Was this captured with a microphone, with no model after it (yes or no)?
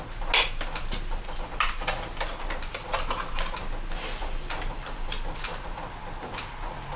yes